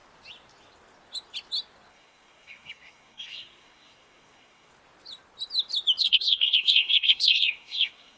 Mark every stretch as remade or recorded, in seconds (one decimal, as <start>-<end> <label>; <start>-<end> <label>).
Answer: 0.0-1.9 recorded; 1.9-4.7 remade; 4.7-6.0 recorded; 6.0-8.2 remade